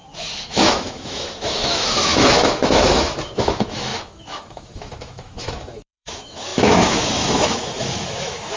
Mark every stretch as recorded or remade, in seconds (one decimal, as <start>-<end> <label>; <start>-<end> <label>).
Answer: 0.0-8.6 remade